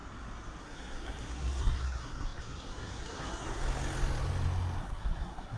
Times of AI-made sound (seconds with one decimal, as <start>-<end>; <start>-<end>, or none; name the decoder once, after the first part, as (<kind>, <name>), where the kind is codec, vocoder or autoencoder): 0.6-3.6 (codec, SNAC); 4.8-5.6